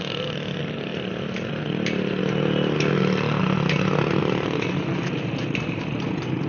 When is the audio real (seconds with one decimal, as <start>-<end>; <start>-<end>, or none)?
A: 0.0-6.5